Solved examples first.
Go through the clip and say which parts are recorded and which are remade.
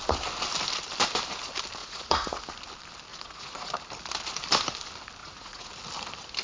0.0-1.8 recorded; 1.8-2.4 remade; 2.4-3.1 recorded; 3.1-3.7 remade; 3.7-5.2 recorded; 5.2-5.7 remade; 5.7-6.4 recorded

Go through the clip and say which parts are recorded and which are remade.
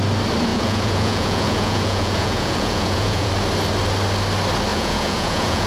0.0-0.5 recorded; 0.5-3.3 remade; 3.3-4.7 recorded; 4.7-5.7 remade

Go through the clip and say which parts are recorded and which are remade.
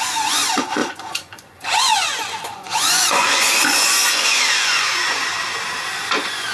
0.0-5.3 remade; 5.3-6.0 recorded; 6.0-6.5 remade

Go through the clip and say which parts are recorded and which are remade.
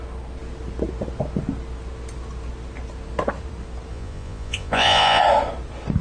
0.0-3.9 recorded; 3.9-5.2 remade; 5.2-6.0 recorded